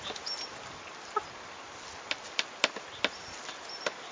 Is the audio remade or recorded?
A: recorded